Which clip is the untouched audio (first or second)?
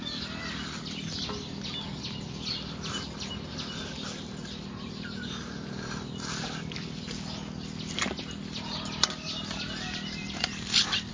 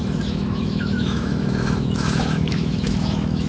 first